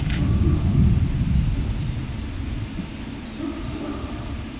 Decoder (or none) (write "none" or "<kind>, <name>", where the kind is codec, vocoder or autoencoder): none